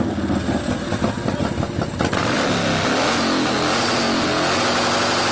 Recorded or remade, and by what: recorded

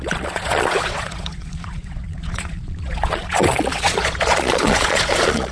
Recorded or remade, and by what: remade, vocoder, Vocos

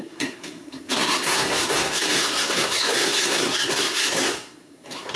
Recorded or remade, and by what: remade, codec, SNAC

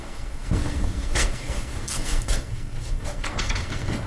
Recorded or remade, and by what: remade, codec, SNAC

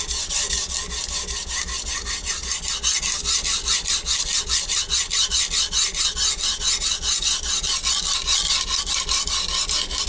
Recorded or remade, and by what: recorded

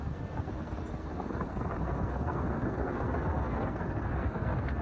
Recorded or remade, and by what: remade, codec, SNAC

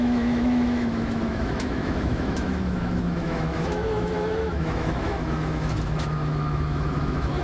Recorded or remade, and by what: remade, autoencoder, DAC-VAE